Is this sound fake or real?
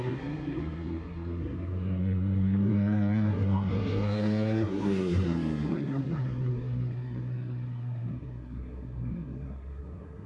fake